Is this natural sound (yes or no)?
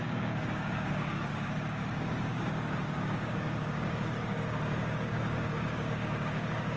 no